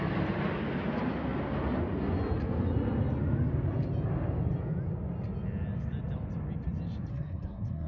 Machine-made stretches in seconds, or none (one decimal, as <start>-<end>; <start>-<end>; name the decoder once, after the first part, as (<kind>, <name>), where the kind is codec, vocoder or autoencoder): 7.1-7.9 (codec, SNAC)